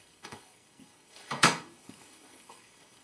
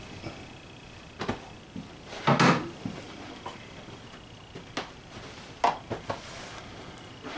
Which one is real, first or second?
second